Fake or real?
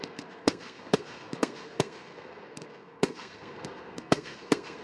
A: fake